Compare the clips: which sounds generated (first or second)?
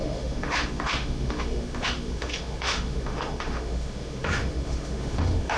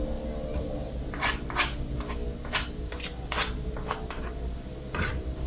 first